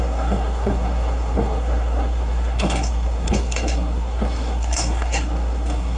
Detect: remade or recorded remade